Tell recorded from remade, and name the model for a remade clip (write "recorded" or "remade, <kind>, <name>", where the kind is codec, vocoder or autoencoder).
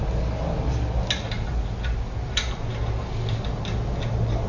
recorded